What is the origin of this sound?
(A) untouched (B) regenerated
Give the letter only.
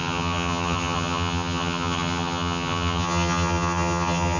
B